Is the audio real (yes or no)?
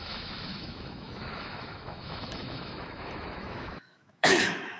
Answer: no